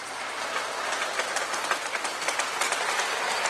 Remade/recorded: recorded